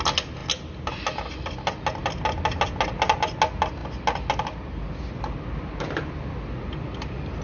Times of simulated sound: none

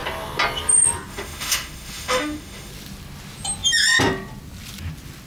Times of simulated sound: 1.1-2.7 (autoencoder, DAC-VAE)